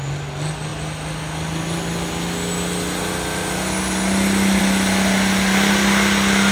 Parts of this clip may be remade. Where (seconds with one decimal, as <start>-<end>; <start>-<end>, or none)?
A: none